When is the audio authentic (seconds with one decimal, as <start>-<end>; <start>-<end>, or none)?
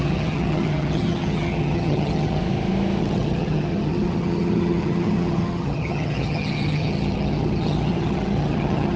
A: 2.4-3.0